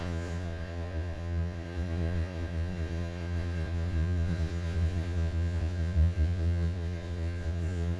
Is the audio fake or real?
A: fake